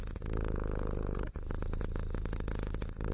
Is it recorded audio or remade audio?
recorded